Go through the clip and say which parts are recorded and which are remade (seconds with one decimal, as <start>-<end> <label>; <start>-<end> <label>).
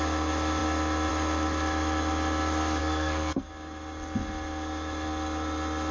0.0-2.8 recorded; 2.8-3.5 remade; 3.5-5.9 recorded